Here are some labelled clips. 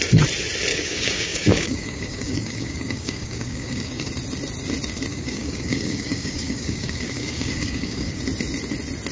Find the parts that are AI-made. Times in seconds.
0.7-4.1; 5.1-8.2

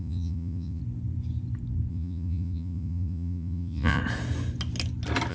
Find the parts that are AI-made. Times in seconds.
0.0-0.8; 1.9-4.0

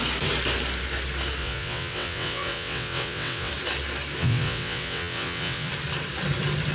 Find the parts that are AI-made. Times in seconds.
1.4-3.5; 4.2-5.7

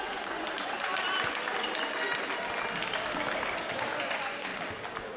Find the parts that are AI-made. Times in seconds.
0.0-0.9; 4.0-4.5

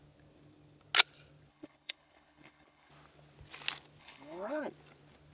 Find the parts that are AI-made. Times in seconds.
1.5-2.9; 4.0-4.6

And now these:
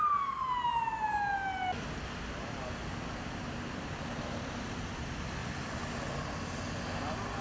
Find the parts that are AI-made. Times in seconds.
none